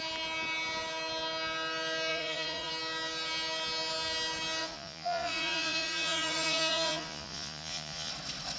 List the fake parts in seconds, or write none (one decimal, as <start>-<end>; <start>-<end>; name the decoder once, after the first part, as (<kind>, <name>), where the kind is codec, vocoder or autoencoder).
2.1-2.7 (vocoder, Vocos); 4.6-8.1